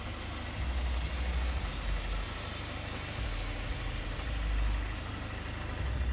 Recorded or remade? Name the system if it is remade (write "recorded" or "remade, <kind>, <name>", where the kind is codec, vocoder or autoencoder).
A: recorded